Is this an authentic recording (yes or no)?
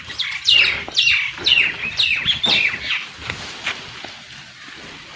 no